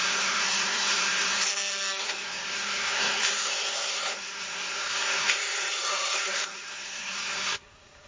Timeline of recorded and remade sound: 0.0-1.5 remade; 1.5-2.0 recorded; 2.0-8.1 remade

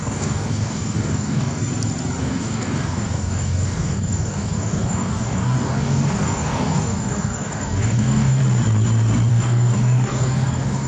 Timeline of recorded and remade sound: 0.0-1.6 remade; 1.6-2.2 recorded; 2.2-8.4 remade; 8.4-9.3 recorded; 9.3-10.9 remade

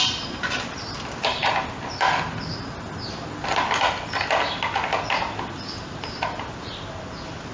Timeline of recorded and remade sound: 0.0-7.5 recorded

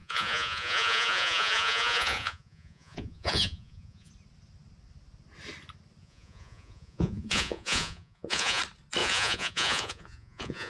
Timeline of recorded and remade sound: 0.0-4.1 remade; 4.1-6.0 recorded; 6.0-8.6 remade; 8.6-9.0 recorded; 9.0-10.7 remade

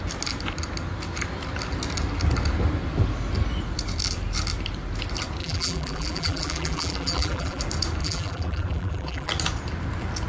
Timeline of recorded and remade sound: 0.0-5.4 recorded; 5.4-7.6 remade; 7.6-8.0 recorded; 8.0-9.3 remade; 9.3-10.3 recorded

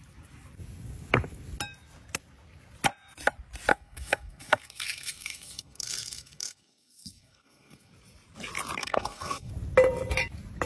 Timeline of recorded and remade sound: 0.0-3.7 recorded; 3.7-7.9 remade; 7.9-8.8 recorded; 8.8-9.5 remade; 9.5-10.7 recorded